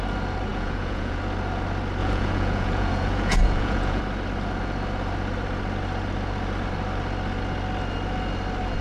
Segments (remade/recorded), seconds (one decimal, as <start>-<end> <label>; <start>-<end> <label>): 0.0-0.5 recorded; 0.5-1.2 remade; 1.2-2.0 recorded; 2.0-4.0 remade; 4.0-8.8 recorded